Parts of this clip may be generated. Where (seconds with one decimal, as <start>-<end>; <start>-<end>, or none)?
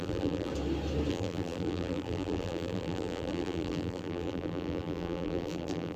0.0-0.5; 1.1-6.0